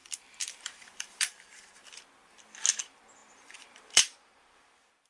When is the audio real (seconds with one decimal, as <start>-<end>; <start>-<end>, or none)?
1.8-2.8